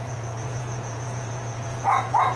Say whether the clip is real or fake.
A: fake